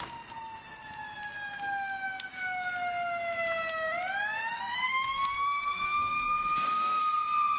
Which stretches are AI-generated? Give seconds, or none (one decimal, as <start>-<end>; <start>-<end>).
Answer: 4.4-7.0